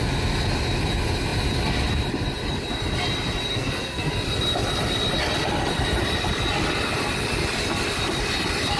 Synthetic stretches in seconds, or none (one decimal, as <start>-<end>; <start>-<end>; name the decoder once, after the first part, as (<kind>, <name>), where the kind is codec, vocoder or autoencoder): 3.5-4.1 (codec, SNAC)

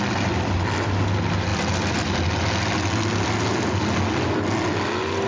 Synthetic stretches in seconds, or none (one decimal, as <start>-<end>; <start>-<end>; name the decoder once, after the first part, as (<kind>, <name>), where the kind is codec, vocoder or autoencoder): none

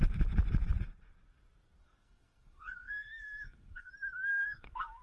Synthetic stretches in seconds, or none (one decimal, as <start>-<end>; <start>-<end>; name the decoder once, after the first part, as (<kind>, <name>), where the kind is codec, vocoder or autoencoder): 1.8-3.9 (codec, SNAC); 4.3-5.0

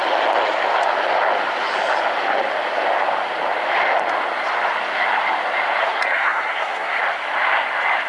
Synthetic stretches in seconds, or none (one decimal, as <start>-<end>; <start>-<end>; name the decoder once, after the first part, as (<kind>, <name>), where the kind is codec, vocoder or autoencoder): 5.8-7.0 (codec, SNAC)

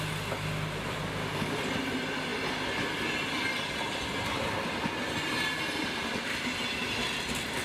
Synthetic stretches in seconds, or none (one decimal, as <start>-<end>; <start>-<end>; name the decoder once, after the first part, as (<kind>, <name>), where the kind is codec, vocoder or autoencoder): none

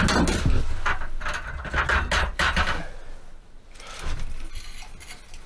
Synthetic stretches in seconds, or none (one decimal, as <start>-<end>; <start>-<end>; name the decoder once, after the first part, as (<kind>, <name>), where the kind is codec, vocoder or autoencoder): none